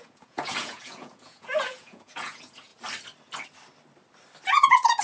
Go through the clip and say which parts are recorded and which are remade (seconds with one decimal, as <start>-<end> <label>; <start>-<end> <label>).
0.0-2.7 remade; 2.7-4.5 recorded; 4.5-5.0 remade